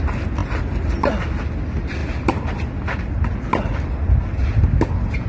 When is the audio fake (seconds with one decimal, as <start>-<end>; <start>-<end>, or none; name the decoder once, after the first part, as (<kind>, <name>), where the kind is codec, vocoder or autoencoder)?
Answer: none